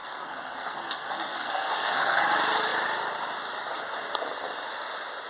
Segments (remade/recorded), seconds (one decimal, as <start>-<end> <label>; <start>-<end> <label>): 0.0-2.2 remade; 2.2-5.3 recorded